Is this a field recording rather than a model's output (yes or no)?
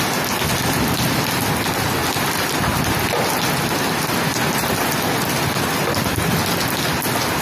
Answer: yes